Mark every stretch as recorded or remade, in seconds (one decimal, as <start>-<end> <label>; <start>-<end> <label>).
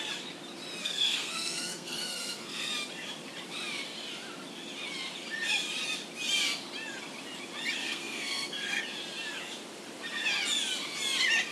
0.0-0.8 recorded; 0.8-2.7 remade; 2.7-7.8 recorded; 7.8-8.8 remade; 8.8-11.5 recorded